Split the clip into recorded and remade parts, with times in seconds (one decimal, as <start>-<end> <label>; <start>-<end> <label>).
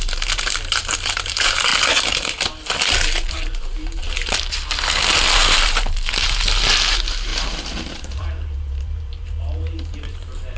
0.0-1.7 remade; 1.7-3.3 recorded; 3.3-4.0 remade; 4.0-5.3 recorded; 5.3-10.6 remade